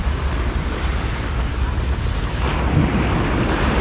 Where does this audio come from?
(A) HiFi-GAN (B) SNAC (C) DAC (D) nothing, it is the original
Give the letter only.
D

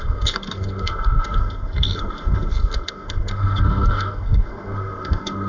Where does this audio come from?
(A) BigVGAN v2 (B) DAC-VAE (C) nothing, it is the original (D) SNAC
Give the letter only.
D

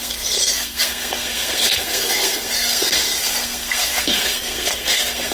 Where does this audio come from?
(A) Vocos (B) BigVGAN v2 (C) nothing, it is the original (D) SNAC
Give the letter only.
D